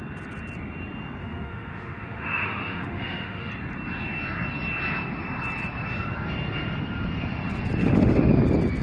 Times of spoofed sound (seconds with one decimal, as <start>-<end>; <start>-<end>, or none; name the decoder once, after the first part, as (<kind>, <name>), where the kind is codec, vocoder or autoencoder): 1.2-3.5 (autoencoder, DAC-VAE); 7.8-8.3